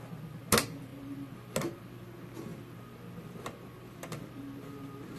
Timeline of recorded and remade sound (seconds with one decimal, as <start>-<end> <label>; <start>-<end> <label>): 0.0-5.2 recorded